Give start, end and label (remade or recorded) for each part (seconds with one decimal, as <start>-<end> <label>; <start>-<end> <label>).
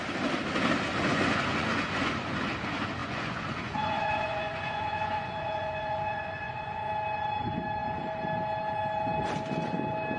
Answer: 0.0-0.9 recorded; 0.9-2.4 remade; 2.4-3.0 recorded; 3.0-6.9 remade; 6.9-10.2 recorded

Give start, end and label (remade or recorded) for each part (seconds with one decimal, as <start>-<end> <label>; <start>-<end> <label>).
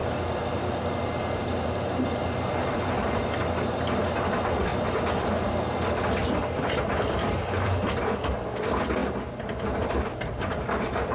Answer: 0.0-1.4 recorded; 1.4-4.7 remade; 4.7-6.8 recorded; 6.8-11.1 remade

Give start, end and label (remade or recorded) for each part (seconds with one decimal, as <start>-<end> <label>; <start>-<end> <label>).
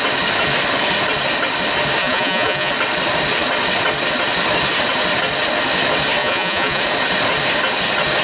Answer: 0.0-2.0 recorded; 2.0-2.7 remade; 2.7-6.2 recorded; 6.2-6.8 remade; 6.8-8.2 recorded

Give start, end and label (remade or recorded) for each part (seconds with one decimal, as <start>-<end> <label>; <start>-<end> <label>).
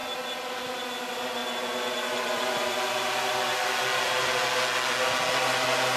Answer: 0.0-6.0 recorded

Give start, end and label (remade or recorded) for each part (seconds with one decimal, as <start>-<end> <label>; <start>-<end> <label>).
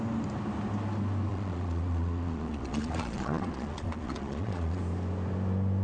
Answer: 0.0-1.3 recorded; 1.3-4.8 remade; 4.8-5.8 recorded